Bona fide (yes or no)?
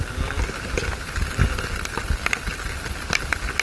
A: yes